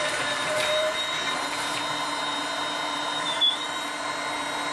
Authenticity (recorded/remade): remade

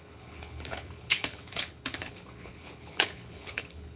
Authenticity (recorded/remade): remade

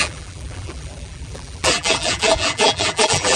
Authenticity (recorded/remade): remade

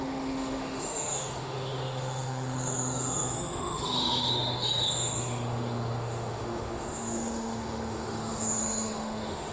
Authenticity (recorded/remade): remade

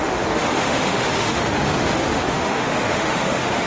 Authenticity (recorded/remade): remade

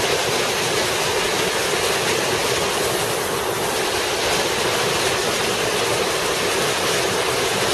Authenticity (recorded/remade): recorded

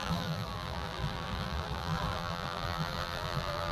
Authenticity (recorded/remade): remade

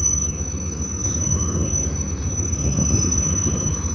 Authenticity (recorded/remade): remade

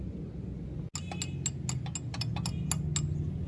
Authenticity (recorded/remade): recorded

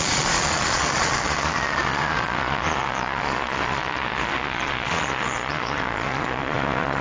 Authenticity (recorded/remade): remade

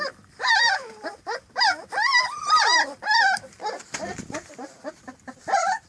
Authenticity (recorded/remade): remade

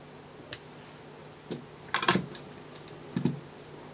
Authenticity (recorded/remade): recorded